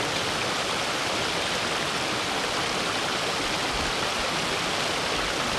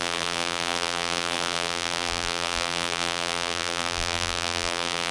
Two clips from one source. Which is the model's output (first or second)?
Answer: second